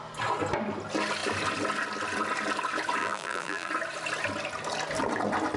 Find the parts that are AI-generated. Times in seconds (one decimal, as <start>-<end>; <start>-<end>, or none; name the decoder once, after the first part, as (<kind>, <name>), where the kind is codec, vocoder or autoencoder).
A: 3.0-3.7 (vocoder, BigVGAN v2)